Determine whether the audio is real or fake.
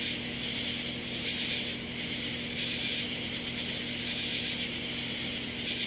real